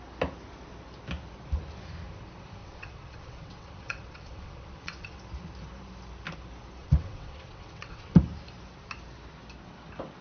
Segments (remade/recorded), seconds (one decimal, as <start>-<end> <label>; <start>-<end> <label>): 0.0-2.6 recorded; 2.6-5.2 remade; 5.2-6.8 recorded; 6.8-8.2 remade; 8.2-10.2 recorded